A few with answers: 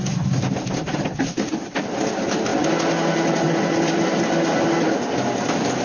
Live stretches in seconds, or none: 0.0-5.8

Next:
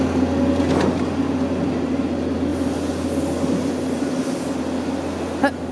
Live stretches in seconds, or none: 0.0-5.7

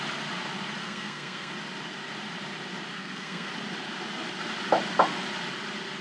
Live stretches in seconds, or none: 0.0-0.8; 1.5-2.9; 3.5-6.0